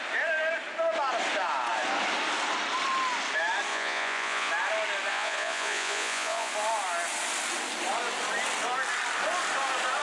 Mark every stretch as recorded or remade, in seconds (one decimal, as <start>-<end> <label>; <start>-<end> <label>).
0.0-3.7 recorded; 3.7-4.5 remade; 4.5-5.1 recorded; 5.1-6.5 remade; 6.5-10.0 recorded